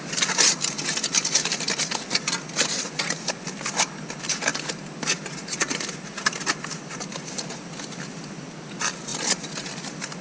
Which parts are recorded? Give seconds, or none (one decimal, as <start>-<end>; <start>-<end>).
0.0-10.2